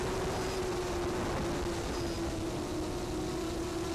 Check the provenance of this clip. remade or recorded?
recorded